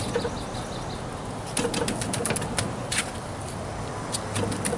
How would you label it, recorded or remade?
recorded